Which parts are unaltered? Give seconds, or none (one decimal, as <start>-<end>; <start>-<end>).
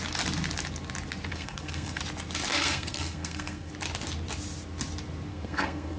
0.0-1.3; 2.0-2.5; 3.7-5.3